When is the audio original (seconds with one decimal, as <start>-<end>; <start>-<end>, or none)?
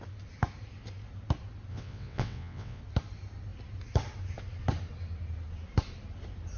0.0-1.7; 2.8-6.6